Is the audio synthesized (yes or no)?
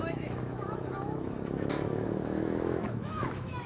yes